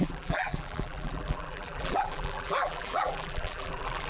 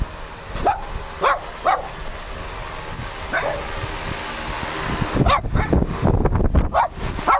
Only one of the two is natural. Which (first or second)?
second